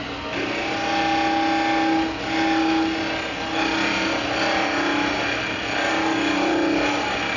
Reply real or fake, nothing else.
real